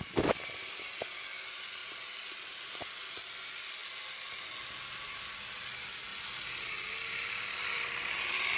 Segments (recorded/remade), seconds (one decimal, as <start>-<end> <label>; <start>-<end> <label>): 0.0-8.6 recorded